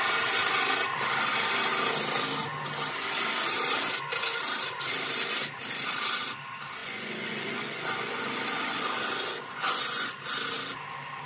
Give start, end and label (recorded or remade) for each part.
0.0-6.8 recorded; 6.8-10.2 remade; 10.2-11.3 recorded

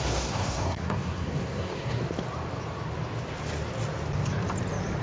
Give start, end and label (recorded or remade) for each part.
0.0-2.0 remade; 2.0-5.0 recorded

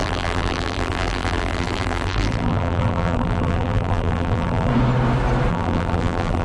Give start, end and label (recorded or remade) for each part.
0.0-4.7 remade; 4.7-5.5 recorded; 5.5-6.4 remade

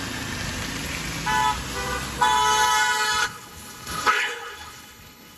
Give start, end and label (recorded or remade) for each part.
0.0-3.2 recorded; 3.2-5.4 remade

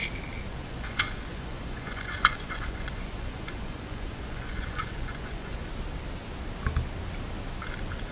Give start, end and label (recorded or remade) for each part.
0.0-0.5 recorded; 0.5-5.6 remade; 5.6-8.1 recorded